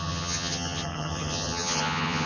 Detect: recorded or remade remade